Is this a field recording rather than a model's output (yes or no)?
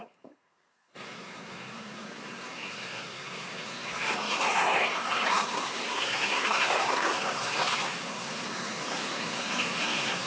no